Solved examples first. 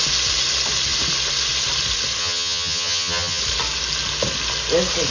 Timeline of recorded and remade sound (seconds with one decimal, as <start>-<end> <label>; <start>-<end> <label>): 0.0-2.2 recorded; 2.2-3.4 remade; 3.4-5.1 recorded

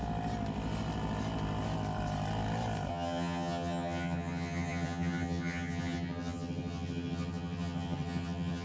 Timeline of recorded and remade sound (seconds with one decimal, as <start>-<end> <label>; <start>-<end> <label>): 0.0-2.9 recorded; 2.9-8.6 remade

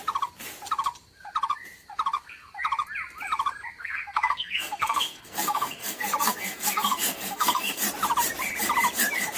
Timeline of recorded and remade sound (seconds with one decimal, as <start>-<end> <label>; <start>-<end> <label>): 0.0-3.8 recorded; 3.8-7.8 remade; 7.8-9.4 recorded

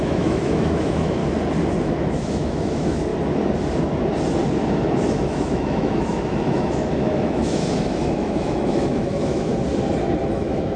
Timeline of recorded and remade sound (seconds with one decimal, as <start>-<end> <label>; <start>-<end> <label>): 0.0-1.2 remade; 1.2-1.8 recorded; 1.8-3.1 remade; 3.1-5.1 recorded; 5.1-9.5 remade; 9.5-10.3 recorded; 10.3-10.8 remade

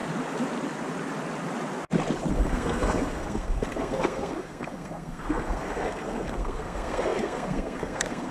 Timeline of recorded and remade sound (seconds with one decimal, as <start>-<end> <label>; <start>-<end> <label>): 0.0-2.3 recorded; 2.3-8.3 remade

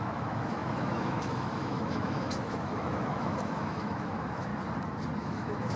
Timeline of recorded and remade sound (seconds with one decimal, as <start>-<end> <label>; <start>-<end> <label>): 0.0-4.5 remade; 4.5-5.2 recorded; 5.2-5.8 remade

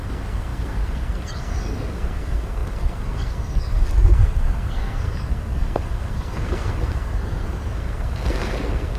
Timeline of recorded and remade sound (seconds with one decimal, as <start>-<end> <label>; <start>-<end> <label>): 0.0-9.0 remade

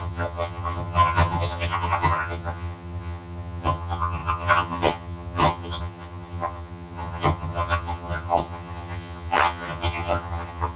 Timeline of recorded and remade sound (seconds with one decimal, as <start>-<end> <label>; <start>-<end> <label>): 0.0-10.8 remade